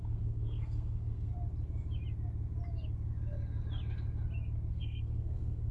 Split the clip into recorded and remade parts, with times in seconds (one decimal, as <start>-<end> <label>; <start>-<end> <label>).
0.0-1.3 remade; 1.3-4.7 recorded; 4.7-5.7 remade